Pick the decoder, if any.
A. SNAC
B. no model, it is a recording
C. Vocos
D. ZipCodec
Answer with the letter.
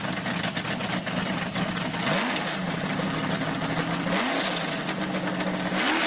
B